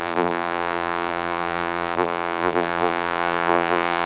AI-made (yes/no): yes